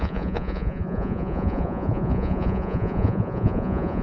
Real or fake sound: fake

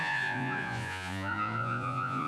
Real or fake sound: fake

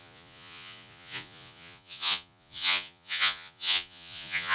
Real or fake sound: fake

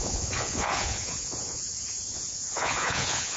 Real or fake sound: fake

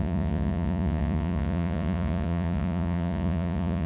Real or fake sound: fake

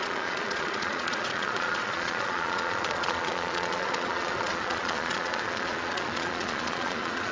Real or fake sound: fake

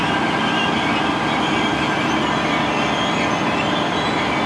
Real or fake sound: real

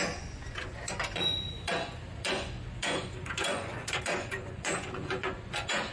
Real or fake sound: fake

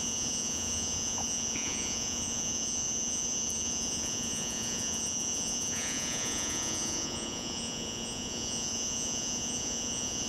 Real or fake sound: fake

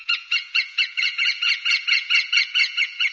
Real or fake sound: fake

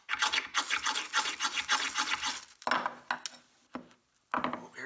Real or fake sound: real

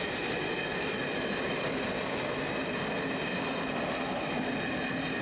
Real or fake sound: real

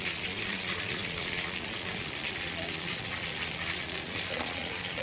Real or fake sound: fake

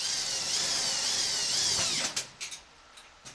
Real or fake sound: real